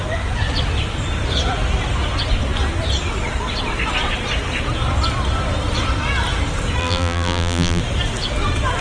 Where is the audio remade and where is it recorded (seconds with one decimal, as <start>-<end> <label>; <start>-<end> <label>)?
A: 0.0-6.8 recorded; 6.8-7.8 remade; 7.8-8.8 recorded

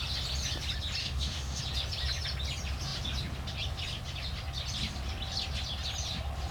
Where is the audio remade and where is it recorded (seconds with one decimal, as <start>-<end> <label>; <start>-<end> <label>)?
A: 0.0-1.0 recorded; 1.0-1.6 remade; 1.6-6.5 recorded